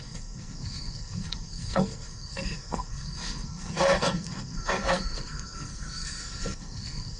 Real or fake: fake